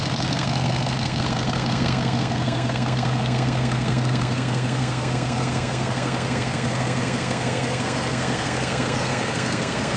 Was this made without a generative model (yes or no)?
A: no